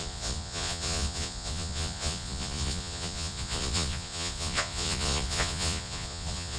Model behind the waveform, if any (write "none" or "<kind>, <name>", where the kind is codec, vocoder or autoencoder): vocoder, Vocos